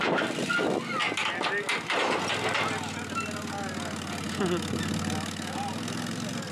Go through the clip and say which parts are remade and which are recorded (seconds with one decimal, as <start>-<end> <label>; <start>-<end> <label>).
0.0-6.5 recorded